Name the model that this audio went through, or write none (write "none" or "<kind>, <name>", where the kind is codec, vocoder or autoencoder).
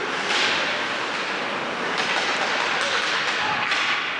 none